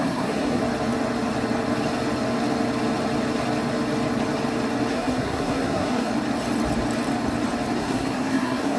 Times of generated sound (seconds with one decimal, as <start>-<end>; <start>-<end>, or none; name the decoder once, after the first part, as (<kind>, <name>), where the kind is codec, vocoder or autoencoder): 0.0-0.6 (codec, SNAC); 4.9-6.1; 7.8-8.8